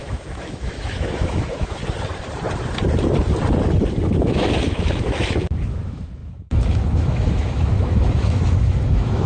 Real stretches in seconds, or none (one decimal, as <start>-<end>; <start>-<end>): 1.8-4.2